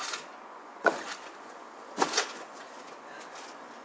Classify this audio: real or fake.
fake